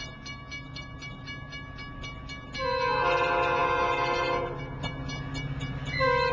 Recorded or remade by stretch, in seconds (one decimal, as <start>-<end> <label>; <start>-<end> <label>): 0.0-6.3 recorded